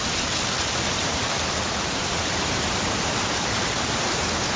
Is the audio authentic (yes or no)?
no